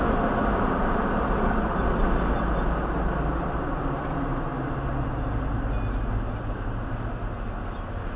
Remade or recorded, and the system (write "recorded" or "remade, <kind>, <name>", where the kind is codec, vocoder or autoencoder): recorded